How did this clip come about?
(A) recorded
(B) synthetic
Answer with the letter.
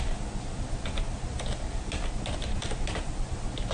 A